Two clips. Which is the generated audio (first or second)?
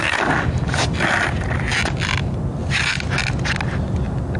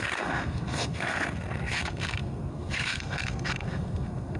second